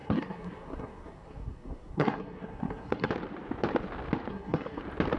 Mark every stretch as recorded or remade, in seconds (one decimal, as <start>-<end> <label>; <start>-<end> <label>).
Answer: 0.0-3.1 remade; 3.1-4.3 recorded; 4.3-4.8 remade; 4.8-5.2 recorded